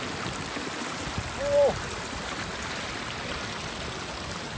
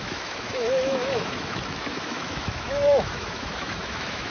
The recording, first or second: first